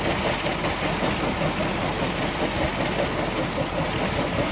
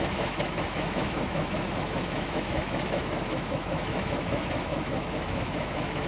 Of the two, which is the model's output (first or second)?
second